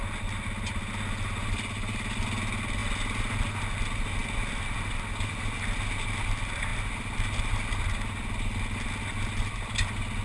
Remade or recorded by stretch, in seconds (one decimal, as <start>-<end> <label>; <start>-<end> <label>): 0.0-10.2 recorded